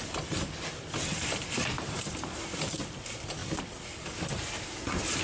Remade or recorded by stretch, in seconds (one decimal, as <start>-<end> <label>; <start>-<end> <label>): 0.0-5.2 recorded

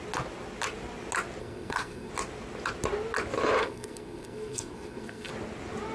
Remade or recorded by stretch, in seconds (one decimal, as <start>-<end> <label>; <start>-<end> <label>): 0.0-1.4 recorded; 1.4-2.1 remade; 2.1-3.6 recorded; 3.6-5.3 remade; 5.3-5.9 recorded

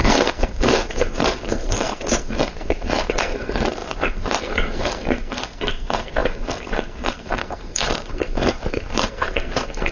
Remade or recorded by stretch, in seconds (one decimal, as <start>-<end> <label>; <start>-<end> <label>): 0.0-9.9 remade

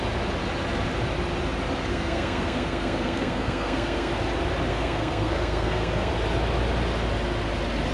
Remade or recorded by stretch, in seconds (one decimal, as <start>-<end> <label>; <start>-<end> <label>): 0.0-1.9 recorded; 1.9-4.1 remade; 4.1-4.7 recorded; 4.7-6.1 remade; 6.1-7.9 recorded

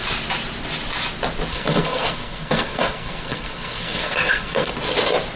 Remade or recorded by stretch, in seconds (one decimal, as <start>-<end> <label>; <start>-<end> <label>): 0.0-1.5 recorded; 1.5-4.7 remade; 4.7-5.4 recorded

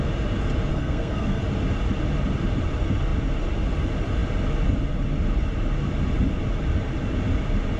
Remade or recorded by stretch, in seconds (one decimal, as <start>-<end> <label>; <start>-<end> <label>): 0.0-0.7 recorded; 0.7-1.4 remade; 1.4-7.8 recorded

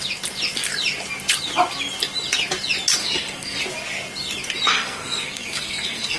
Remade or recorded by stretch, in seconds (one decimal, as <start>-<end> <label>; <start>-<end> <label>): 0.0-3.0 recorded; 3.0-3.6 remade; 3.6-4.7 recorded; 4.7-6.2 remade